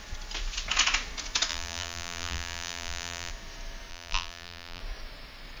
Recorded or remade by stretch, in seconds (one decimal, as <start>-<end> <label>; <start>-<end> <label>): 0.0-1.5 recorded; 1.5-3.3 remade; 3.3-3.9 recorded; 3.9-4.8 remade; 4.8-5.6 recorded